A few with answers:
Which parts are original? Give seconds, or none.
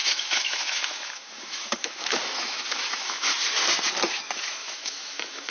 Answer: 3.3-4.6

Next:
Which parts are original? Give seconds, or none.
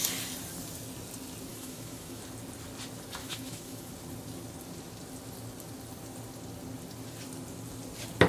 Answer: 0.0-1.5; 2.2-3.2; 3.9-8.3